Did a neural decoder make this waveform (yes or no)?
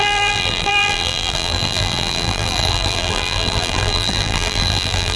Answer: yes